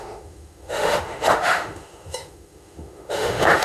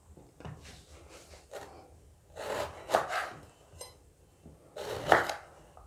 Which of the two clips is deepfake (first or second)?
first